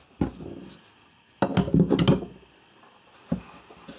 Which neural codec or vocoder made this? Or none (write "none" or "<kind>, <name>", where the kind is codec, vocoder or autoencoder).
none